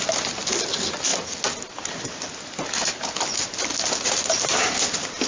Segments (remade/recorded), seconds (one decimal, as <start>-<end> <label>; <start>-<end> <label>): 0.0-5.3 recorded